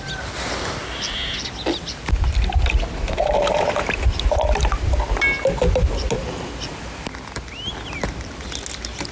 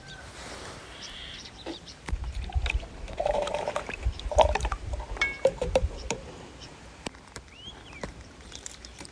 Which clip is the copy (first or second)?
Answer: second